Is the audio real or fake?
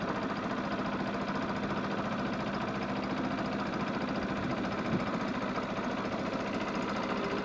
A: real